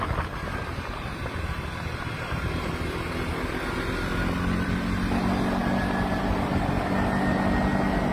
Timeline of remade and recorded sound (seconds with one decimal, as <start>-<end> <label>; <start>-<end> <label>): 0.0-8.1 recorded